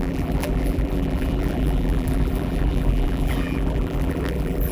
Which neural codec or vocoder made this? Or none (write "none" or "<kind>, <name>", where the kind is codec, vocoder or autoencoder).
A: vocoder, BigVGAN v2